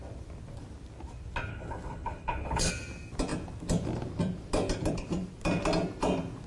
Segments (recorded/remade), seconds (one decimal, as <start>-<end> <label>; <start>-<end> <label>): 0.0-1.5 recorded; 1.5-2.7 remade; 2.7-6.5 recorded